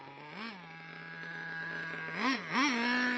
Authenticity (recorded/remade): recorded